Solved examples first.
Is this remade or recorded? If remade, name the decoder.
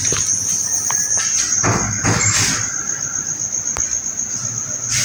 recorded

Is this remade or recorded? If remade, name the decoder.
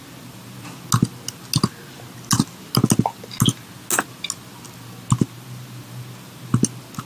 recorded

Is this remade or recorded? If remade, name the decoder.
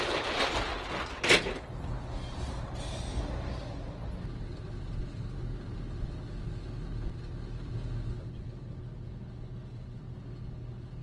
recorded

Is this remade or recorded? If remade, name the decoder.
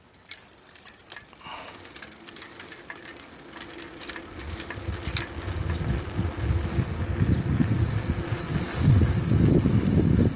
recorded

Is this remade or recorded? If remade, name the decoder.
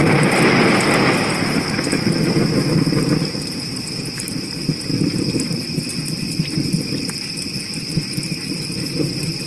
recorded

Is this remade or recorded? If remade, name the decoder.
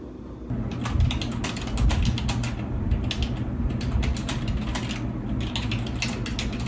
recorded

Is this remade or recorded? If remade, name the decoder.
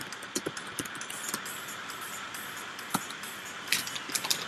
recorded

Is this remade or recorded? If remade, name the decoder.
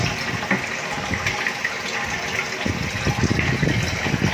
recorded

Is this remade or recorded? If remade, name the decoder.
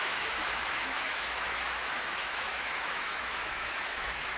remade, autoencoder, DAC-VAE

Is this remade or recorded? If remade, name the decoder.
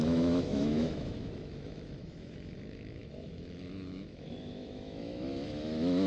remade, autoencoder, DAC-VAE